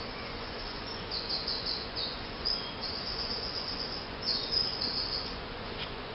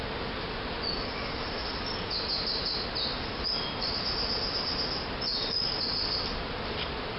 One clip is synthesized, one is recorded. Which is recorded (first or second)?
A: second